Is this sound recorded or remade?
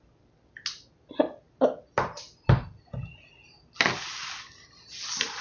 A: recorded